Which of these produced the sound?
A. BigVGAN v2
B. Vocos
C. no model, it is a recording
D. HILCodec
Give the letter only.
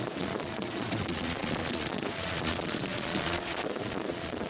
B